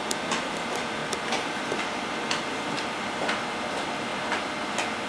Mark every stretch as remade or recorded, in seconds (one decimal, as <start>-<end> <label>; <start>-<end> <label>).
0.0-5.1 recorded